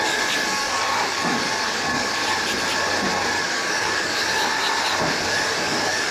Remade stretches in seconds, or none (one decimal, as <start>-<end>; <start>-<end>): 0.0-2.2; 3.4-4.5; 5.2-6.1